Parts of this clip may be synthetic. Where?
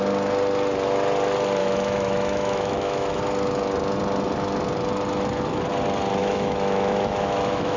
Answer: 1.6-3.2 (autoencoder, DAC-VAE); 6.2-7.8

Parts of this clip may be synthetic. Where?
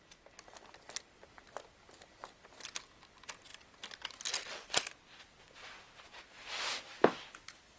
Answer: none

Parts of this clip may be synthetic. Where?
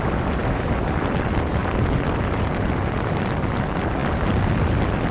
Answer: 0.4-1.0 (vocoder, BigVGAN v2); 1.6-2.7